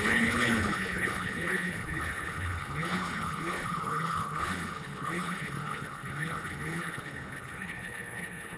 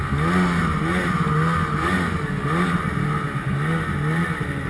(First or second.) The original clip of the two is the second